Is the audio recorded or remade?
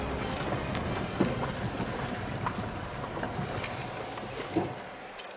recorded